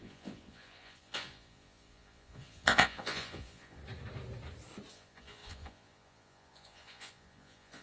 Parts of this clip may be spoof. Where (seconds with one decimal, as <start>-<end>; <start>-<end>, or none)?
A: 0.0-3.8; 4.9-7.8